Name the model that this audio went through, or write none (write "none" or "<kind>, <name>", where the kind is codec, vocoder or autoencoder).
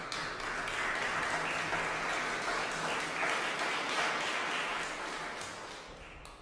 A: none